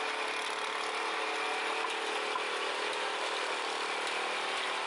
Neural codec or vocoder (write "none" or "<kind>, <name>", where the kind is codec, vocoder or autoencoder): none